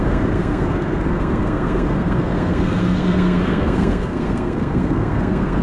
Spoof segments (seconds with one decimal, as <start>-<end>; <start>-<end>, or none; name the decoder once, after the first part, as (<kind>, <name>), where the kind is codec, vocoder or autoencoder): 0.0-5.6 (codec, SNAC)